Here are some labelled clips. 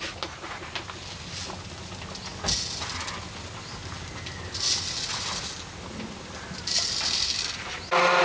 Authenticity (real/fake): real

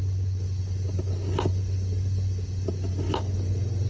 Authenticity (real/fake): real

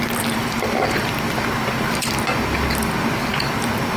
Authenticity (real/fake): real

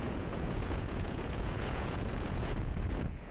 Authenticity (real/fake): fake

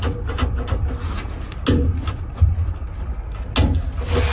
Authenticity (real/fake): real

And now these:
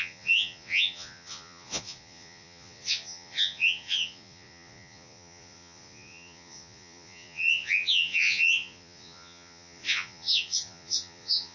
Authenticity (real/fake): fake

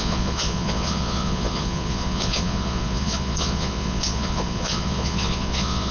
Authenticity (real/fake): fake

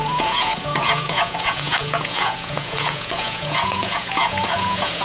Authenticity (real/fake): fake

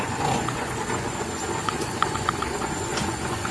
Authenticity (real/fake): fake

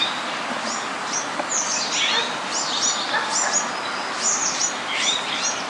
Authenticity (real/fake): real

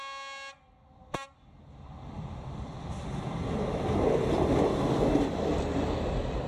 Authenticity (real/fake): real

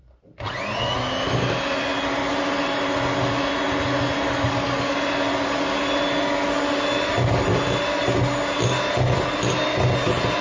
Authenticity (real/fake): real